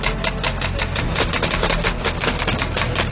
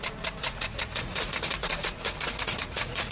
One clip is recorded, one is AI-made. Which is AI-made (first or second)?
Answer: second